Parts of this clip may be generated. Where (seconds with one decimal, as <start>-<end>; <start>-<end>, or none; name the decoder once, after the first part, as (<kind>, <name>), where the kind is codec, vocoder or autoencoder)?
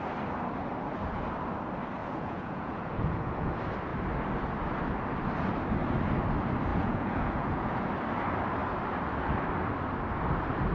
2.0-3.5 (vocoder, Vocos); 6.7-7.8